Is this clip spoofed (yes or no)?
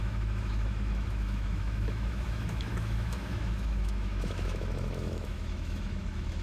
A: yes